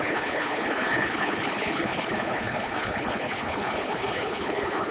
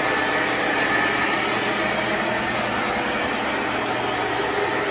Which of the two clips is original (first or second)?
second